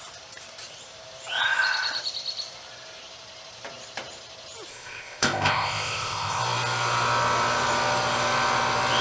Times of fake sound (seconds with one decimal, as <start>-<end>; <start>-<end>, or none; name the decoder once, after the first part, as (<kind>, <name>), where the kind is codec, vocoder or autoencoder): 4.7-6.4 (codec, ZipCodec)